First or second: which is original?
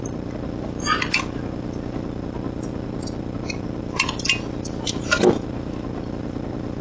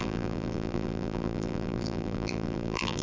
first